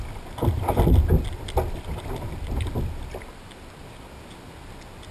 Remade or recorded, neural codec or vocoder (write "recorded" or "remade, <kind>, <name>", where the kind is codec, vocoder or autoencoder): recorded